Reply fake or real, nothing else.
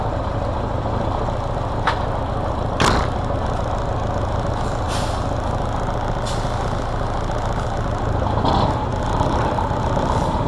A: real